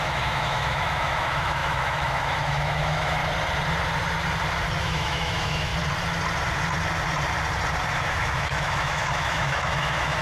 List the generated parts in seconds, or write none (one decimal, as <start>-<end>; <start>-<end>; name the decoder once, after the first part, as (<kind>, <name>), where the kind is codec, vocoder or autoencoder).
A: 0.0-3.2 (autoencoder, DAC-VAE); 4.8-5.7; 7.9-10.2